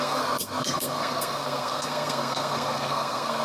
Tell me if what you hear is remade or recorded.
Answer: remade